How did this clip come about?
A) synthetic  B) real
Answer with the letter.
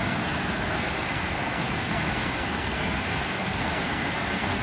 A